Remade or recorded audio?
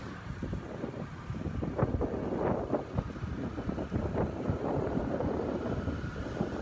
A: recorded